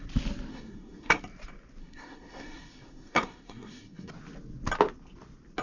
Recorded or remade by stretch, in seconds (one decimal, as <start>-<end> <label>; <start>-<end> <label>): 0.0-0.5 recorded; 0.5-1.2 remade; 1.2-1.8 recorded; 1.8-4.1 remade; 4.1-5.6 recorded